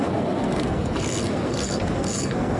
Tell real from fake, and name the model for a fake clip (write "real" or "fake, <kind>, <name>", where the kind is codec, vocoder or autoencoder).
fake, codec, SNAC